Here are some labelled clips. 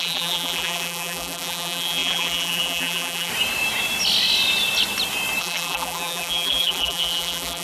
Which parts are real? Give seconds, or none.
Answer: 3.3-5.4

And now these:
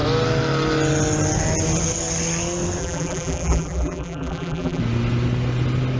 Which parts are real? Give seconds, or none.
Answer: 0.0-2.8; 4.8-6.0

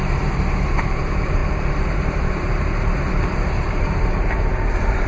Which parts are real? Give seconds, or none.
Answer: none

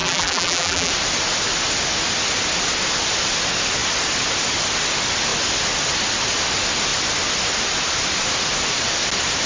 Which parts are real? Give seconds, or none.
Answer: 0.9-9.5

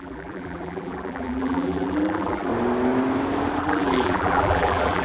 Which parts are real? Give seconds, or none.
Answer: 2.5-3.6